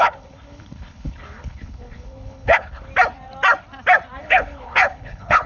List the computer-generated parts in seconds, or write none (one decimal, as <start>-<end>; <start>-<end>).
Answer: 0.0-2.9; 4.2-5.5